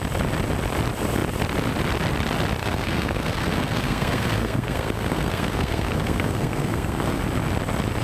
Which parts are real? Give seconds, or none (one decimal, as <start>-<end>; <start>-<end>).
0.0-2.6; 7.2-8.0